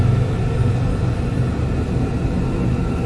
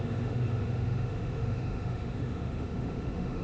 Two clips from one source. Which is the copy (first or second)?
second